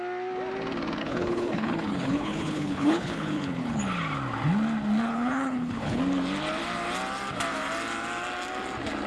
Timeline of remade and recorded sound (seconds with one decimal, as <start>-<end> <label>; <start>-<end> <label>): 0.0-1.0 recorded; 1.0-3.8 remade; 3.8-5.0 recorded; 5.0-6.0 remade; 6.0-9.1 recorded